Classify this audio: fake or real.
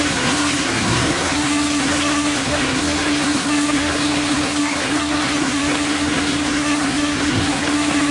fake